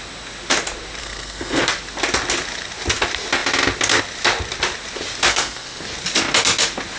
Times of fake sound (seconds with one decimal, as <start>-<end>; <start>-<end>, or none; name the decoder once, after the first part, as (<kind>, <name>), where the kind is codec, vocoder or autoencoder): 1.0-1.6 (codec, SNAC); 5.3-5.8